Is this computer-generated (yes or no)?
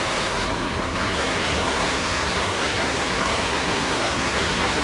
yes